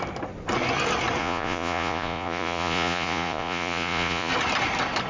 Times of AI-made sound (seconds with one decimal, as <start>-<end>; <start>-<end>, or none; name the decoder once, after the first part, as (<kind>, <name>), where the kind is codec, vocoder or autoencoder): 1.2-4.3 (vocoder, Vocos)